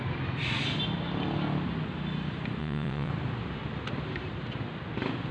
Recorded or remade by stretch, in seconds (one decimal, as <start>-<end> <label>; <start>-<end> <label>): 0.0-2.6 recorded; 2.6-3.1 remade; 3.1-5.3 recorded